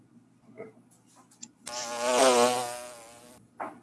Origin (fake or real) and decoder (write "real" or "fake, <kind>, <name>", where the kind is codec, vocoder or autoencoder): real